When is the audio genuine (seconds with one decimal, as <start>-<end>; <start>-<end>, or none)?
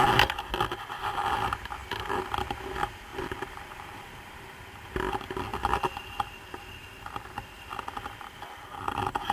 0.0-3.1; 4.6-9.3